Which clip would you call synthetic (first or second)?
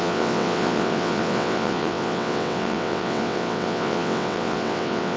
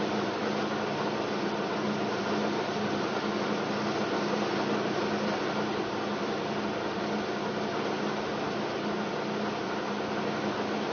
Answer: first